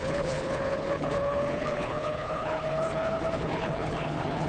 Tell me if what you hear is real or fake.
fake